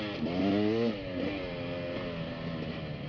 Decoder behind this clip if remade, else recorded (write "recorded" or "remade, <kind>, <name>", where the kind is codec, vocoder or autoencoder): recorded